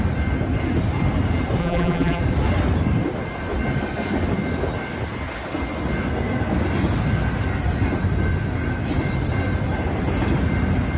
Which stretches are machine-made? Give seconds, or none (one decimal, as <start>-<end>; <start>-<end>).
1.6-2.2